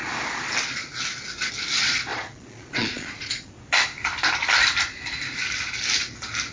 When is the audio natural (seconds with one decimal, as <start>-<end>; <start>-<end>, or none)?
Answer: 0.0-2.1; 3.5-6.5